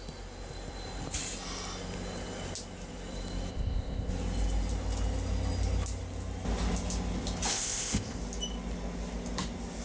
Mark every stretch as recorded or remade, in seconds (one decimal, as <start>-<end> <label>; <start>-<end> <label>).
0.0-3.5 recorded; 3.5-4.1 remade; 4.1-7.5 recorded; 7.5-8.2 remade; 8.2-9.8 recorded